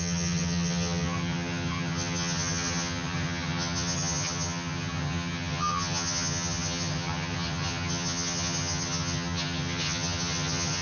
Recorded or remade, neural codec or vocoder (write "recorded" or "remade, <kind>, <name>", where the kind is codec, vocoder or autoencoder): remade, vocoder, HiFi-GAN